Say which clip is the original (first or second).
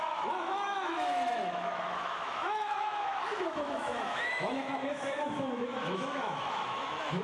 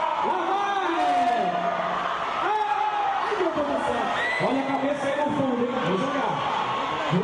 second